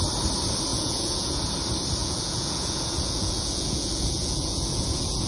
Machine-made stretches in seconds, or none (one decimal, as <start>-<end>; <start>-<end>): 0.7-1.4; 2.0-5.3